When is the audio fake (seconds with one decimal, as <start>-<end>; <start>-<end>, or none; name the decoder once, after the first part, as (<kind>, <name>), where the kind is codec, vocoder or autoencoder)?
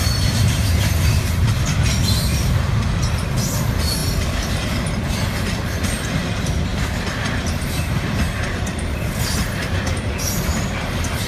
0.0-1.5 (vocoder, BigVGAN v2)